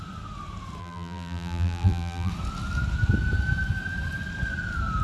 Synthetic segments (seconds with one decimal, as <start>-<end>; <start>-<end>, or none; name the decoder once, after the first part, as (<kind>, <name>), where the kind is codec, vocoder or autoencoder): 0.8-2.3 (vocoder, BigVGAN v2)